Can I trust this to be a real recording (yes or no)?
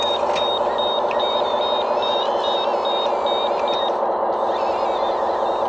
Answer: yes